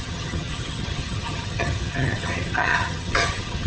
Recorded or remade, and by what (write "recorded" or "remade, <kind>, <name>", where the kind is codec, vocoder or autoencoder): remade, vocoder, HiFi-GAN